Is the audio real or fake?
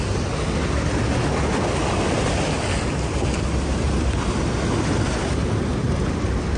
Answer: real